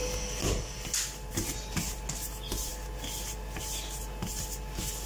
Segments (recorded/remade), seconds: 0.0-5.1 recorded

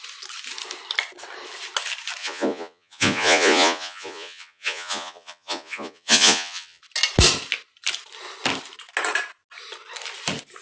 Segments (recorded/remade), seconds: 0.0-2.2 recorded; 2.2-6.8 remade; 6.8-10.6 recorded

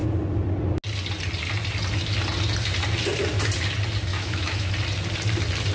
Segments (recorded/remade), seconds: 0.0-4.1 recorded; 4.1-4.7 remade; 4.7-5.7 recorded

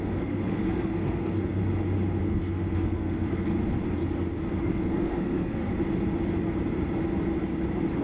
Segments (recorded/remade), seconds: 0.0-1.6 remade; 1.6-2.2 recorded; 2.2-3.5 remade; 3.5-4.6 recorded; 4.6-5.7 remade; 5.7-8.0 recorded